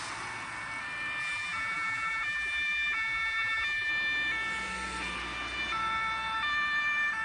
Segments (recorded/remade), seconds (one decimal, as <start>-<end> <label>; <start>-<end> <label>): 0.0-1.2 recorded; 1.2-3.9 remade; 3.9-7.2 recorded